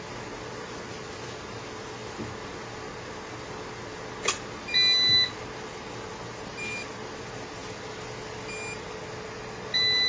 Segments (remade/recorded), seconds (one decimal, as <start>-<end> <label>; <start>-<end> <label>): 0.0-10.1 recorded